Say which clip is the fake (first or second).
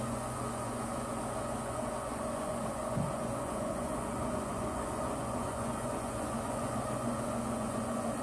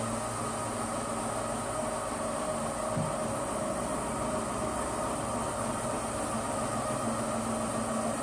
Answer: first